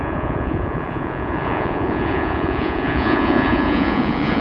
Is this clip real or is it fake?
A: fake